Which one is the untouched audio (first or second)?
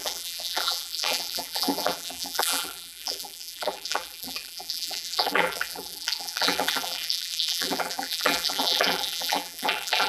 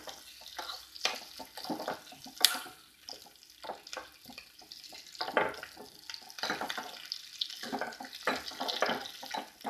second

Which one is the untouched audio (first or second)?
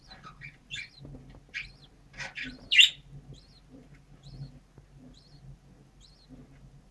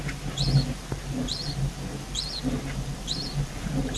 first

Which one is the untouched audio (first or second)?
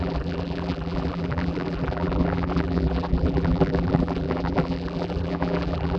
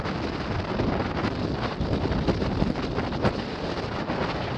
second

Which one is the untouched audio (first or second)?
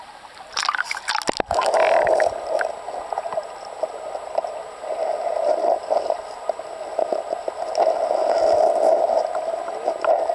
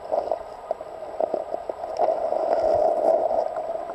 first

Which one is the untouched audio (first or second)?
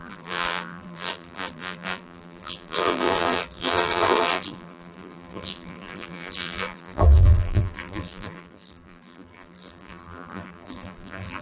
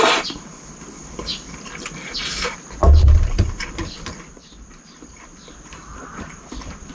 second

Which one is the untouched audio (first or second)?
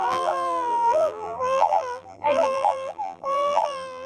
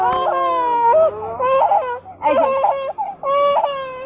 second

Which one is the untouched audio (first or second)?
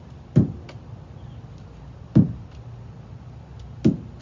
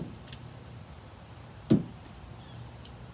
first